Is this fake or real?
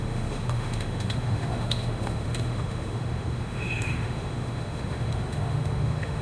fake